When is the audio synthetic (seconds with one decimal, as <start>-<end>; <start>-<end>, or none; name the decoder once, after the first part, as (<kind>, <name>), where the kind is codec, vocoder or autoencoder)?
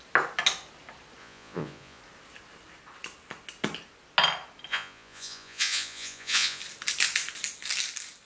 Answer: 1.2-2.0 (vocoder, Vocos); 4.7-6.6